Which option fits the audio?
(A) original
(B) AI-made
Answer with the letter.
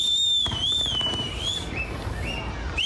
A